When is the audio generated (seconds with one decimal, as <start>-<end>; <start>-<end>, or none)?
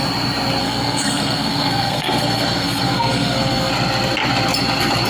0.6-3.7